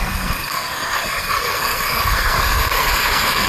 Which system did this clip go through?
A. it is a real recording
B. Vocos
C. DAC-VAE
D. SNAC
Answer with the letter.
D